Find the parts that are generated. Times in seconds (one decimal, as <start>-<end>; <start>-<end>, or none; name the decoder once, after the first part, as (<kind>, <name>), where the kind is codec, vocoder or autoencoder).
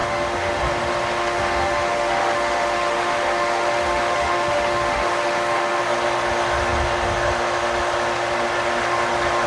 0.0-0.6 (autoencoder, DAC-VAE); 1.2-5.8